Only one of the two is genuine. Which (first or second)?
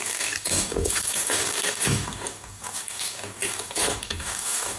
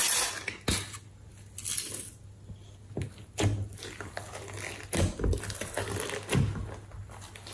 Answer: second